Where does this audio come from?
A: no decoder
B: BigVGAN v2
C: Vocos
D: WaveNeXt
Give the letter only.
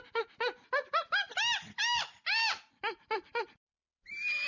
A